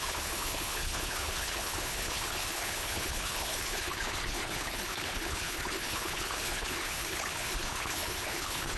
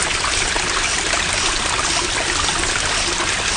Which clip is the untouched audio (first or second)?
second